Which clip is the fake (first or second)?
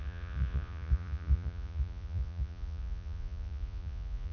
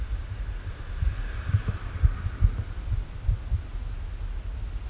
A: first